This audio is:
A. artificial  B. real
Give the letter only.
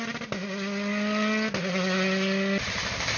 B